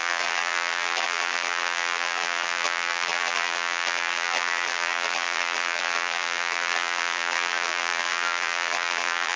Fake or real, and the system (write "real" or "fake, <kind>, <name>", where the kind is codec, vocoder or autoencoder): fake, vocoder, BigVGAN v2